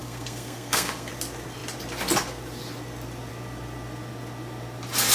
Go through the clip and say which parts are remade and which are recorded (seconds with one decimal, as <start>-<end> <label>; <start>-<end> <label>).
0.0-1.1 remade; 1.1-5.1 recorded